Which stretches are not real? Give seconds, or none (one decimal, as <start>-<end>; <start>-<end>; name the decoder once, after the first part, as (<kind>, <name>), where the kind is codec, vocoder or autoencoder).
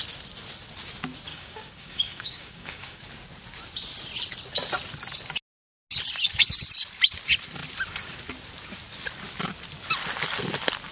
1.3-3.0 (codec, DAC)